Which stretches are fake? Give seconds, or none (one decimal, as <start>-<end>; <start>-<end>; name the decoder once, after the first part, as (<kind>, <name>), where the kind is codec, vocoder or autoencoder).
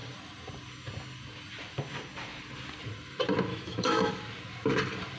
3.5-4.1 (autoencoder, DAC-VAE)